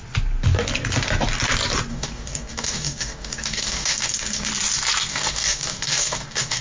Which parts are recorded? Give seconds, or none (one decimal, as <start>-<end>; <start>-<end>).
0.0-1.9; 4.5-5.1